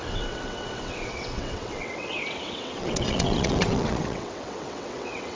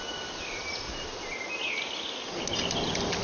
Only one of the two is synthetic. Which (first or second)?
first